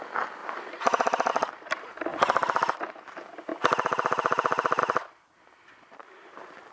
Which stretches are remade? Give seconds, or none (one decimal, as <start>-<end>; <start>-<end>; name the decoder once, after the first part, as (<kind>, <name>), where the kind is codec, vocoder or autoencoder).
0.4-1.3 (vocoder, BigVGAN v2); 2.1-2.8; 3.5-4.8